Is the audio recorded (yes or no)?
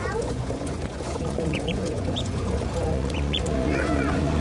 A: no